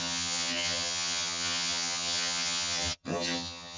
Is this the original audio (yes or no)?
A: no